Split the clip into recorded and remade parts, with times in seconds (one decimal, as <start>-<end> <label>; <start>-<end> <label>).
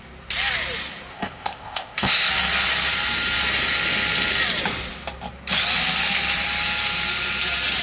0.0-1.1 recorded; 1.1-2.3 remade; 2.3-7.8 recorded